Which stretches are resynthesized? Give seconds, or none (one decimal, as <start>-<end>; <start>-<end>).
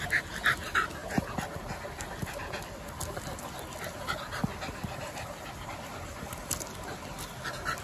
none